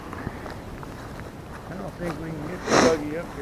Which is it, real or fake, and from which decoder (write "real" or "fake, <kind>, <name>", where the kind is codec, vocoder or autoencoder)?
real